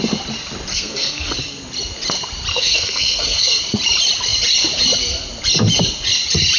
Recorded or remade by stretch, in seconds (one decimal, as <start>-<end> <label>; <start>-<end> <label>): 0.0-0.7 recorded; 0.7-1.3 remade; 1.3-2.5 recorded; 2.5-3.6 remade; 3.6-6.6 recorded